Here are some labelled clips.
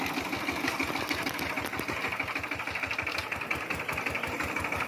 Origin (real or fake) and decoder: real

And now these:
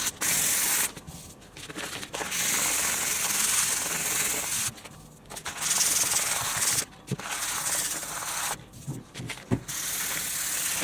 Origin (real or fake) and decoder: real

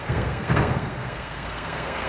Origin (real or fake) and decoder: fake, codec, SNAC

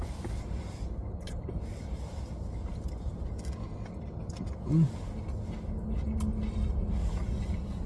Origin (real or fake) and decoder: real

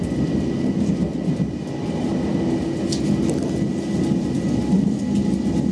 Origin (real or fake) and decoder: real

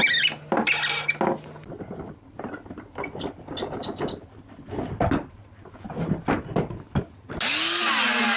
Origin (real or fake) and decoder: real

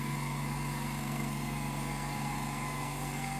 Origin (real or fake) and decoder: fake, codec, SNAC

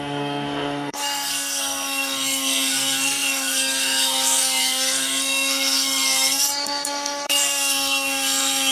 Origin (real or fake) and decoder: fake, codec, SNAC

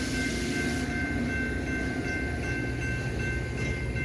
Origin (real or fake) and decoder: real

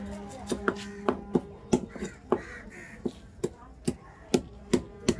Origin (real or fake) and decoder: real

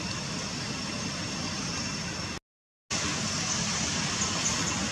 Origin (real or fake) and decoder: real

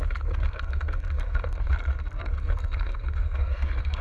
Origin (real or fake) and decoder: fake, codec, SNAC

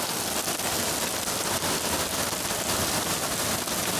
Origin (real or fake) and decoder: real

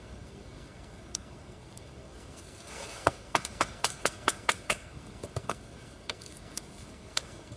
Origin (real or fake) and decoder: fake, codec, SNAC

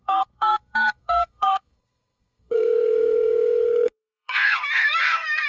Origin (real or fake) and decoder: fake, codec, SNAC